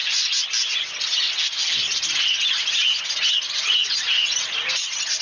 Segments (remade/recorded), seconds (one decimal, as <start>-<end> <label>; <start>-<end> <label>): 0.0-5.2 recorded